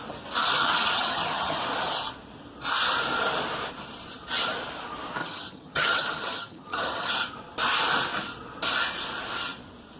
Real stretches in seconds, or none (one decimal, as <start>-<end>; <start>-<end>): 0.0-0.6; 1.6-5.2; 7.1-10.0